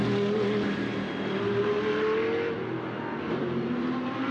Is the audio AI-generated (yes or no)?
no